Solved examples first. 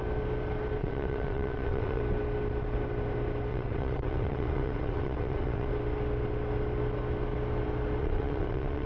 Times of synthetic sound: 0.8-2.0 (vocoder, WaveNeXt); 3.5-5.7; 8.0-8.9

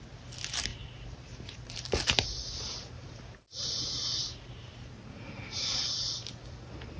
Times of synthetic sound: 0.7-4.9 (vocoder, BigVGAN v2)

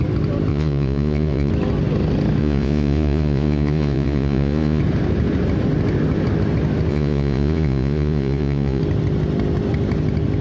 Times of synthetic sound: 0.5-1.5 (vocoder, Vocos); 2.4-4.8; 6.9-8.8